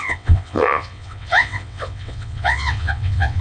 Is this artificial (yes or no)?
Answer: yes